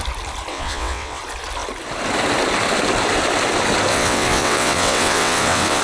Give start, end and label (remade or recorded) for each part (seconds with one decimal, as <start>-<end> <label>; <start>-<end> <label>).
0.0-0.5 recorded; 0.5-1.2 remade; 1.2-3.9 recorded; 3.9-5.8 remade